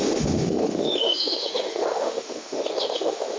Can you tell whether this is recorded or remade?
remade